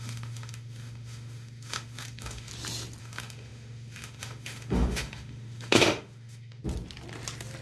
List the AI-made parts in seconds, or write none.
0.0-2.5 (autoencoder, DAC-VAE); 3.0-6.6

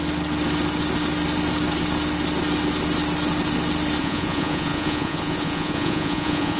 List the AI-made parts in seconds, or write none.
4.0-6.6 (vocoder, Vocos)

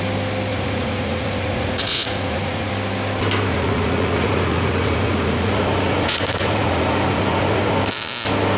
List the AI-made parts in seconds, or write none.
0.5-2.7 (vocoder, Vocos); 3.5-7.8